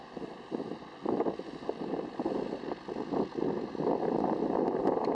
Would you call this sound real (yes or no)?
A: yes